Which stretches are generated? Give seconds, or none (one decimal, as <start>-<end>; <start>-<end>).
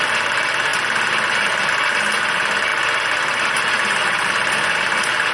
none